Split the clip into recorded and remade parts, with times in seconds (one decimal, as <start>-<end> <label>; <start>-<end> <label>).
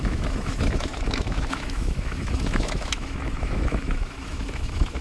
0.0-5.0 remade